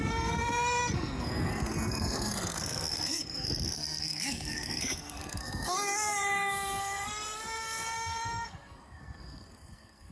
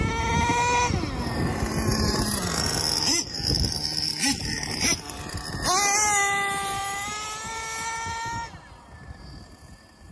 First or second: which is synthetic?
first